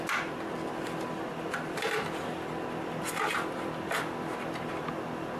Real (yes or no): yes